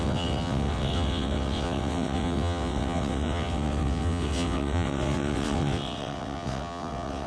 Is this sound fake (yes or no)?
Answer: yes